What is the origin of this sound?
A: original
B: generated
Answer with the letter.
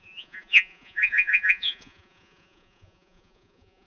B